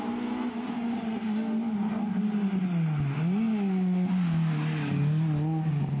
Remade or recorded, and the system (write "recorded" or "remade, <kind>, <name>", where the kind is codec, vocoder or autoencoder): recorded